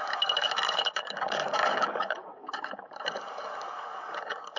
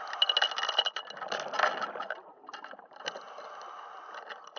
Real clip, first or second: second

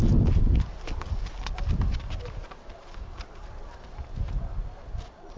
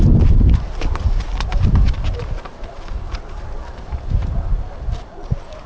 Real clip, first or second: first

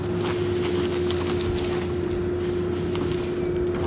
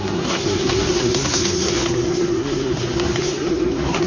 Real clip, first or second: first